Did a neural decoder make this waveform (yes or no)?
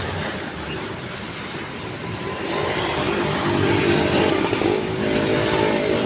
yes